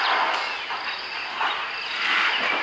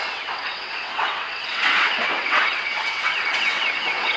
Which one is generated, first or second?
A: second